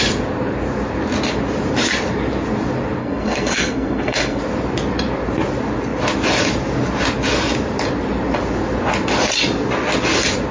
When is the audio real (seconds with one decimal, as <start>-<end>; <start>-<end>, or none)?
0.0-3.0; 4.4-10.5